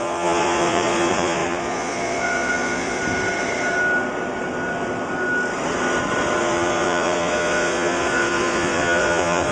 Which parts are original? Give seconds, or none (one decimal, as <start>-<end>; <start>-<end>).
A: 3.0-6.4